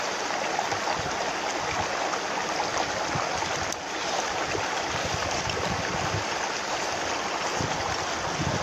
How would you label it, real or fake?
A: real